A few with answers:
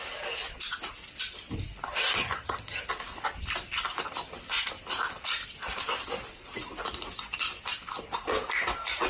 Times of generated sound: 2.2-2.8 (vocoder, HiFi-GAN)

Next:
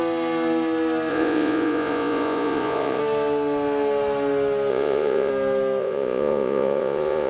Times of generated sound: 1.1-3.0 (vocoder, Vocos); 4.7-5.3; 5.8-7.3

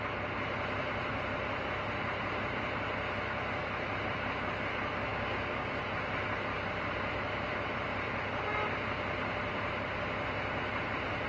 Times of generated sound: 5.1-5.8 (codec, DAC)

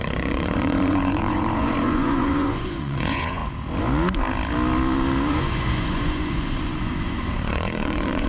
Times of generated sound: 0.0-3.4 (vocoder, Vocos); 5.3-8.3